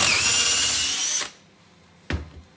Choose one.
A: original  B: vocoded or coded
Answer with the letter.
A